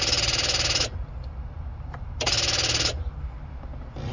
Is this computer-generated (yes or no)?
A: no